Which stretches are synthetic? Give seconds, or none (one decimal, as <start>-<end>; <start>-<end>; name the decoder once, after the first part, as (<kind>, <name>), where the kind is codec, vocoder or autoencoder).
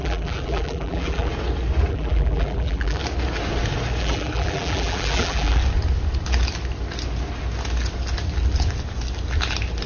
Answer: 0.0-1.3 (vocoder, BigVGAN v2); 1.9-3.0; 4.0-5.6